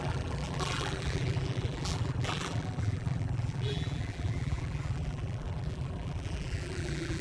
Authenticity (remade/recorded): remade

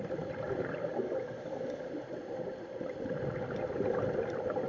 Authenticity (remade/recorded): remade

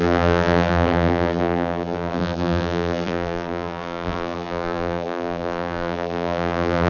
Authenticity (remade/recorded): remade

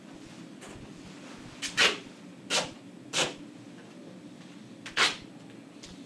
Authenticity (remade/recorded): remade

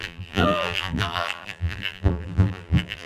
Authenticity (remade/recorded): remade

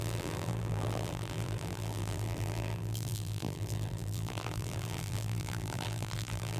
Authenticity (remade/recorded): remade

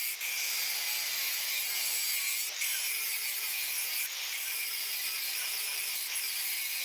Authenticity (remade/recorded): recorded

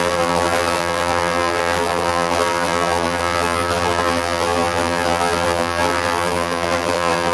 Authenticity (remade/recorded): remade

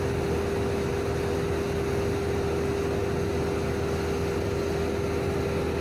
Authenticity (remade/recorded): recorded